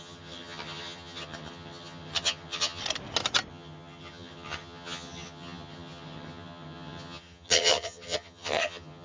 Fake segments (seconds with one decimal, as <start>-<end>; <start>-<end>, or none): 0.0-2.8; 3.5-9.0